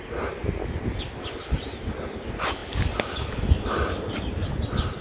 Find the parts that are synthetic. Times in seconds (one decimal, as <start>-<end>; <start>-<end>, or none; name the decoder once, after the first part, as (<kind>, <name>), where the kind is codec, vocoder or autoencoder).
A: 2.6-4.2 (vocoder, BigVGAN v2)